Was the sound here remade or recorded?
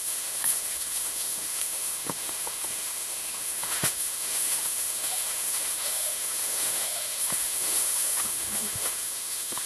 remade